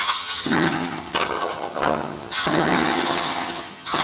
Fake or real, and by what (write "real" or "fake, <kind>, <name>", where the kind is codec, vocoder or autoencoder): fake, vocoder, HiFi-GAN